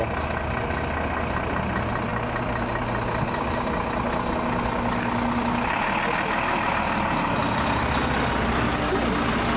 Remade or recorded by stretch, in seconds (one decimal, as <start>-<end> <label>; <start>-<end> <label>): 0.0-9.6 recorded